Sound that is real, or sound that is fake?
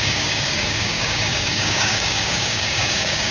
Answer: fake